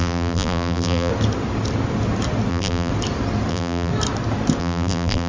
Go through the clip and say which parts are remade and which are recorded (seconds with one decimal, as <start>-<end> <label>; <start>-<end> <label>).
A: 0.0-1.1 remade; 1.1-2.5 recorded; 2.5-2.9 remade; 2.9-3.5 recorded; 3.5-3.9 remade; 3.9-4.6 recorded; 4.6-5.3 remade